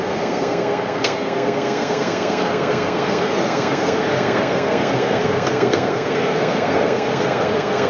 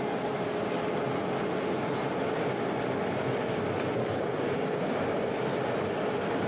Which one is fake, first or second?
first